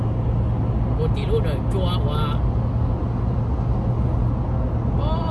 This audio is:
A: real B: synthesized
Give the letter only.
A